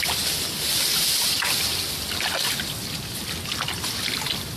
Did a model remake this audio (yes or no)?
no